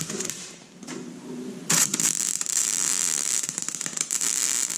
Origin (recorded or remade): remade